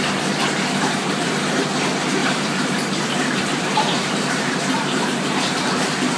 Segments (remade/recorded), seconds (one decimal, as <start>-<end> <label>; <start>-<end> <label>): 0.0-2.2 recorded; 2.2-6.2 remade